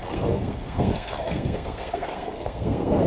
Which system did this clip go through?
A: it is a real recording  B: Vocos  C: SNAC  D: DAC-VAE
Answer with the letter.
C